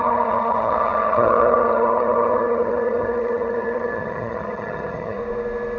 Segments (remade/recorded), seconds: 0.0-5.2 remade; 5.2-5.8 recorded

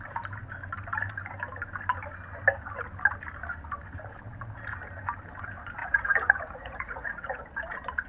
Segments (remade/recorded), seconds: 0.0-5.8 recorded; 5.8-7.4 remade; 7.4-8.1 recorded

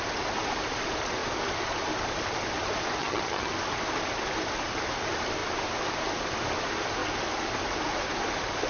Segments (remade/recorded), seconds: 0.0-3.0 recorded; 3.0-3.5 remade; 3.5-8.7 recorded

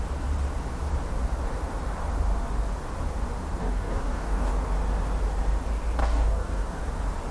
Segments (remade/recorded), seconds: 0.0-3.6 recorded; 3.6-4.5 remade; 4.5-6.0 recorded; 6.0-6.8 remade; 6.8-7.3 recorded

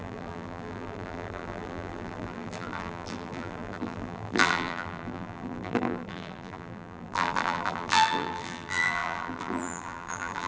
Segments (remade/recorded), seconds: 0.0-10.5 remade

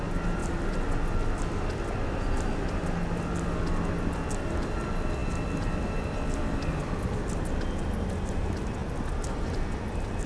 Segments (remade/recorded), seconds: 0.0-10.3 recorded

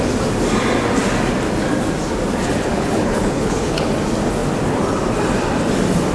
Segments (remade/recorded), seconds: 0.0-2.7 recorded; 2.7-3.9 remade; 3.9-6.1 recorded